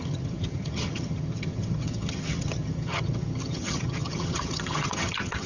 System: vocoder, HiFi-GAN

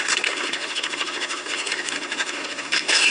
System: codec, SNAC